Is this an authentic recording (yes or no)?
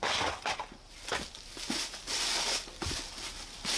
yes